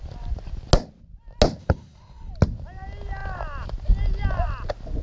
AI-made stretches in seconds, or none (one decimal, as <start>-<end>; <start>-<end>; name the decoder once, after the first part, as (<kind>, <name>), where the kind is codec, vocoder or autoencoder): 1.6-2.3 (codec, HILCodec)

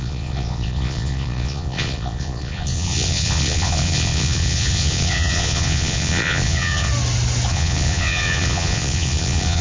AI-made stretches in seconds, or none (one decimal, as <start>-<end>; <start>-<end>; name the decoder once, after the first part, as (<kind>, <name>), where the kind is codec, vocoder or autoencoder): 0.0-6.9 (vocoder, Vocos); 7.5-9.6

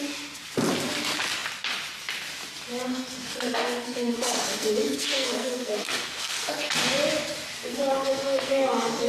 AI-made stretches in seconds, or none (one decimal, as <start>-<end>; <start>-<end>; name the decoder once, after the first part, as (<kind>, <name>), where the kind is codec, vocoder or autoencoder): 2.9-6.7 (codec, SNAC); 7.6-9.1

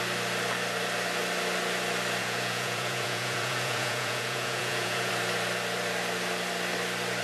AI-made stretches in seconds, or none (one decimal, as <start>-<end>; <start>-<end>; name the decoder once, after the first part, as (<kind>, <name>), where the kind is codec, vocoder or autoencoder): 2.2-5.1 (vocoder, Vocos)

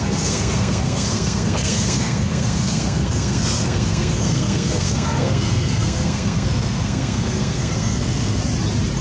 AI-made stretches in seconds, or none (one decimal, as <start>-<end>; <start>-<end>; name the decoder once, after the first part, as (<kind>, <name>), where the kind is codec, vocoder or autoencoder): 0.0-8.4 (codec, SNAC)

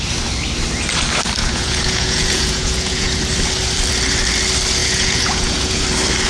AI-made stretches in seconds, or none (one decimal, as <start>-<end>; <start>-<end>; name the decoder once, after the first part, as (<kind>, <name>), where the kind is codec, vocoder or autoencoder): 1.4-3.2 (vocoder, Vocos); 4.8-5.8

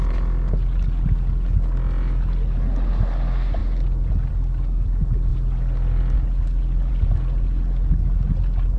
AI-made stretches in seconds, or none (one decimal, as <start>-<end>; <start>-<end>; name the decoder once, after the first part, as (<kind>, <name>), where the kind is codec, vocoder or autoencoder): none

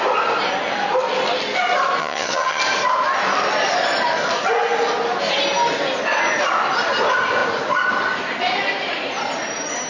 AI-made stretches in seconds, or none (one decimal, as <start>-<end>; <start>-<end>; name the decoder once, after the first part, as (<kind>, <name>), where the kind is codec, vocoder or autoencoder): 2.0-2.6 (vocoder, HiFi-GAN)